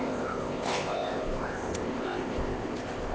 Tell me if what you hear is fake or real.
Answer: fake